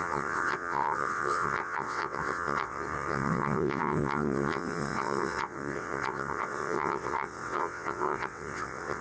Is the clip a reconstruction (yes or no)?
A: yes